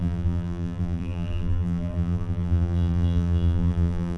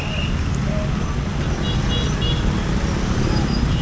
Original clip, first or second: second